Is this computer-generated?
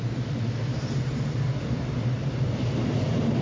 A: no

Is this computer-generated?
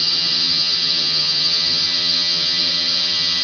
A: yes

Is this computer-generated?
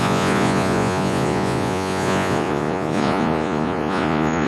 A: yes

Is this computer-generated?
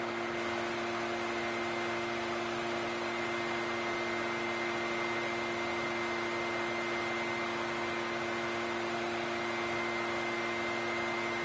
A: no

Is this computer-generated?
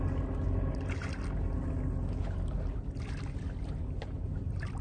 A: no